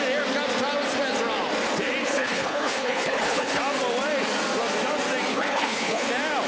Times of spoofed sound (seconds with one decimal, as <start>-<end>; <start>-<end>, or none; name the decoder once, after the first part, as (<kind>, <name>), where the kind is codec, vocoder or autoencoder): 2.0-3.6 (codec, HILCodec); 5.3-6.1